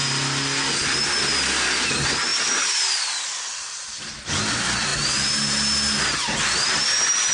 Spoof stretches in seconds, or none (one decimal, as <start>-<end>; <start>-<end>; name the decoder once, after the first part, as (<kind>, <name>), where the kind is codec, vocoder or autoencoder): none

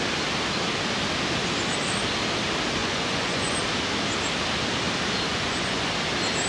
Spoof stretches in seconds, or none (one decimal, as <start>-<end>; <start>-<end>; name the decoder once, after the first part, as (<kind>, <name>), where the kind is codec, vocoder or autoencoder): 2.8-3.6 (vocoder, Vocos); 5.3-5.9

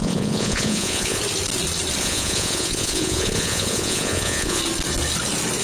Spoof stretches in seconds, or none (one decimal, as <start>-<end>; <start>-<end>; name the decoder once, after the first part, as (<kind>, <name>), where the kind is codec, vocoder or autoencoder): 0.0-1.2 (vocoder, Vocos); 2.0-4.6

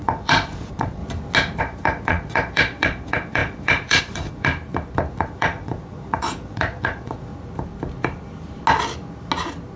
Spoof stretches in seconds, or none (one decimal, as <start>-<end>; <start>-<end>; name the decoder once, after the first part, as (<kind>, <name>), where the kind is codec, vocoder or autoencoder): 0.0-1.0 (vocoder, Vocos); 1.6-4.5; 5.1-7.3

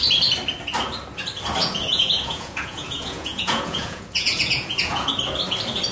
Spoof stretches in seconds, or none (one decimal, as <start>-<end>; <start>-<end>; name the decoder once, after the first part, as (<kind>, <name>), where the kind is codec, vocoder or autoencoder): 1.6-5.1 (vocoder, Vocos)